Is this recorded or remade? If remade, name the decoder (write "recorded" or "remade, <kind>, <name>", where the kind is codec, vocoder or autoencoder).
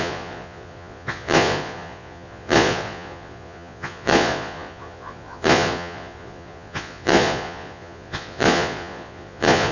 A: remade, vocoder, Vocos